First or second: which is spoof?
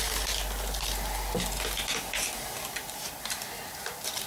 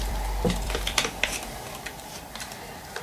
second